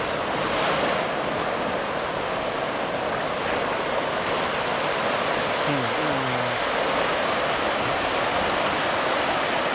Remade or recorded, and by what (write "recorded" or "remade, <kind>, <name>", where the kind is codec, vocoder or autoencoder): recorded